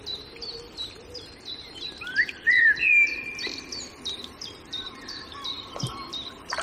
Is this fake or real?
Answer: fake